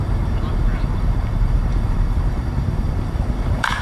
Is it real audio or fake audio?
fake